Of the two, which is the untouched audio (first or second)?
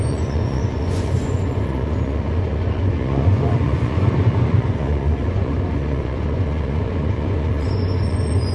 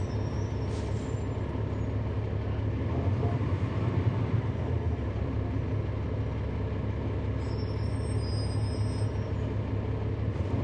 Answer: second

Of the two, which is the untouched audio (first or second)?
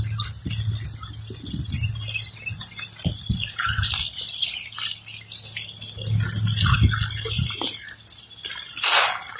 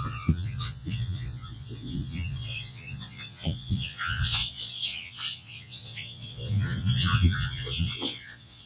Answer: first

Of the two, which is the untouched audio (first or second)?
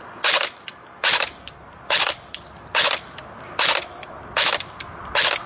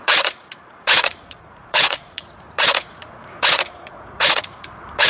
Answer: first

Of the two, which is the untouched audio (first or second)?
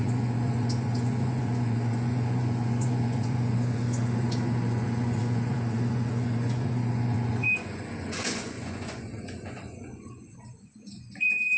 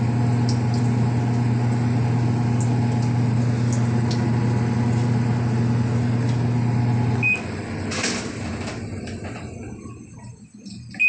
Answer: second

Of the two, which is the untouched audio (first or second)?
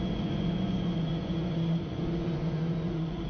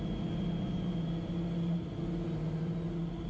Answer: second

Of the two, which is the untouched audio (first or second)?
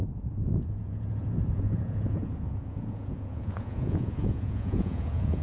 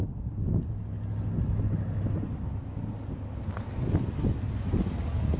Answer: second